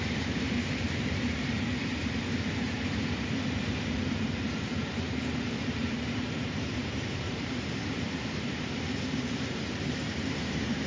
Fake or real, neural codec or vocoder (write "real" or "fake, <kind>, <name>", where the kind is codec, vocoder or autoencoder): fake, vocoder, BigVGAN v2